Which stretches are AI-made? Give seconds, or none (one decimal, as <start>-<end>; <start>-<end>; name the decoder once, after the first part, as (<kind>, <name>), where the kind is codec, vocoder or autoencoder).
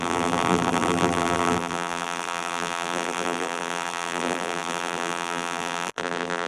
0.0-6.5 (vocoder, BigVGAN v2)